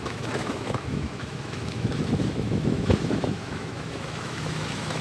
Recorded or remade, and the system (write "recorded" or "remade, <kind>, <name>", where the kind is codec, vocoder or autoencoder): remade, autoencoder, DAC-VAE